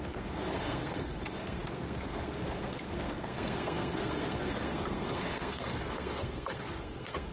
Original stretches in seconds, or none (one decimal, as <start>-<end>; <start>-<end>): none